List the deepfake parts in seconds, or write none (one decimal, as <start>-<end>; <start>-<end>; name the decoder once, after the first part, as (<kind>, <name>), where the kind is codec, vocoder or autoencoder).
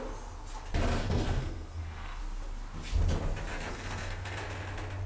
1.0-2.2 (codec, SNAC); 3.7-4.4